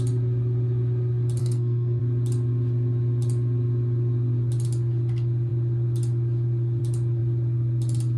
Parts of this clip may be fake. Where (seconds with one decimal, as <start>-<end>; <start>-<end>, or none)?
1.4-2.0